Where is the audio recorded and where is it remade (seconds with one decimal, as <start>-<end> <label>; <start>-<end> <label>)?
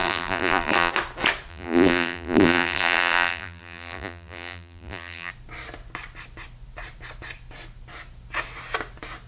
0.0-0.9 remade; 0.9-1.5 recorded; 1.5-5.3 remade; 5.3-9.3 recorded